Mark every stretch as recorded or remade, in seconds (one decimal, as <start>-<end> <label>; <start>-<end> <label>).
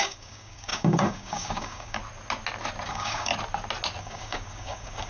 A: 0.0-2.0 remade; 2.0-2.9 recorded; 2.9-3.3 remade; 3.3-4.0 recorded; 4.0-5.1 remade